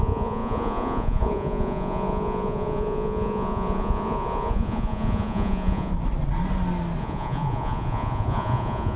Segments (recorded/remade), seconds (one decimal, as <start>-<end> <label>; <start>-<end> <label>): 0.0-5.9 remade; 5.9-7.0 recorded; 7.0-9.0 remade